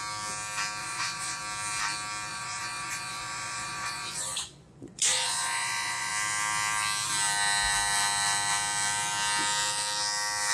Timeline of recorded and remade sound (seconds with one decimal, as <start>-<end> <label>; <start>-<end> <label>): 0.0-0.8 recorded; 0.8-1.4 remade; 1.4-2.3 recorded; 2.3-6.1 remade; 6.1-10.5 recorded